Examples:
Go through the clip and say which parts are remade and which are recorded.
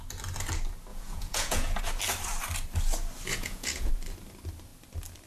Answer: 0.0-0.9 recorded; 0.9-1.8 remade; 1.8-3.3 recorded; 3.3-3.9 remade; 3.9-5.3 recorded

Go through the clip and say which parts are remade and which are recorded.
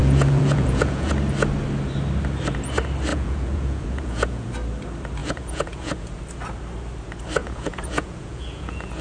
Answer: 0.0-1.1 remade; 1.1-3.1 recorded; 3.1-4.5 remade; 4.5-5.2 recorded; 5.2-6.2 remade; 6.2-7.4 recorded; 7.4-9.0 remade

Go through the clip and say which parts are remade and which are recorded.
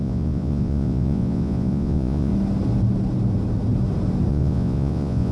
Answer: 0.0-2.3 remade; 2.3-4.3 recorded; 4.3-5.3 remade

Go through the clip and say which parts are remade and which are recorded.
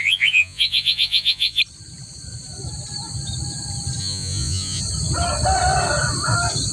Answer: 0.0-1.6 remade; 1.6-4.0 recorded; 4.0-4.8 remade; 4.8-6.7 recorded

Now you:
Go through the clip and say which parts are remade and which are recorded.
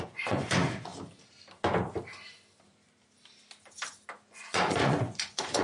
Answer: 0.0-0.9 remade; 0.9-4.3 recorded; 4.3-5.6 remade